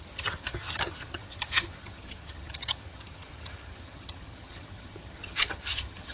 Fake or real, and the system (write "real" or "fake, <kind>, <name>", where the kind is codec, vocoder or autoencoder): fake, vocoder, HiFi-GAN